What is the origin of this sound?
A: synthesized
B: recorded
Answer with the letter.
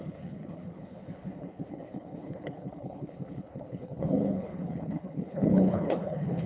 A